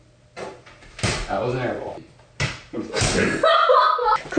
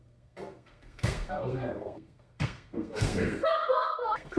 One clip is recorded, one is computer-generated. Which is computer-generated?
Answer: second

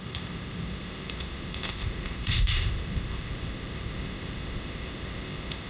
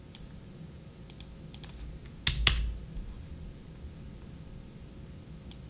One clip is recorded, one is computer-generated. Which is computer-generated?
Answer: first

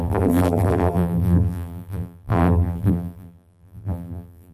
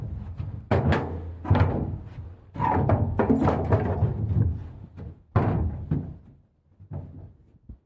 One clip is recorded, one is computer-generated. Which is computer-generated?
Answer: first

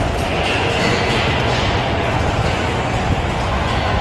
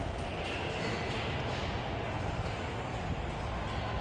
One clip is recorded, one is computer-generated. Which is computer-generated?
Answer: first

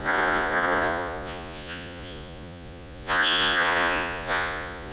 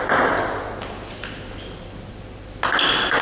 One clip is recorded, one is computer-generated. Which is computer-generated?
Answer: first